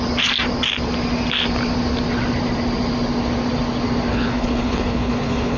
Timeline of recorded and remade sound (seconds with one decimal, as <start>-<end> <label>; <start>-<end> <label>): 0.0-4.1 recorded; 4.1-5.6 remade